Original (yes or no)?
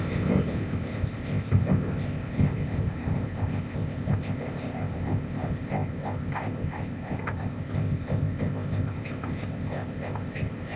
no